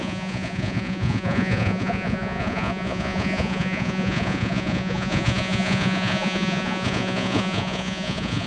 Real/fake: fake